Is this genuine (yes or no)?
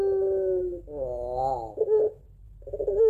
yes